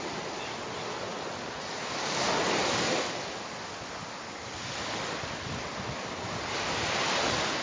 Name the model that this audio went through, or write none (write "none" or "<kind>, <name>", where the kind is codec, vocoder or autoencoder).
none